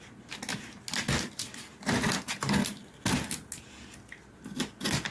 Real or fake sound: real